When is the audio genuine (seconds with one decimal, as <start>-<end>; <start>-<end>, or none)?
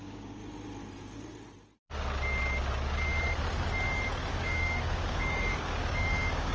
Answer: 0.4-4.3